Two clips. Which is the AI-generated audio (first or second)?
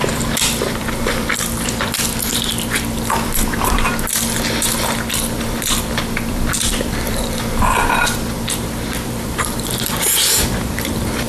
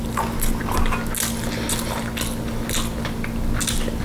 first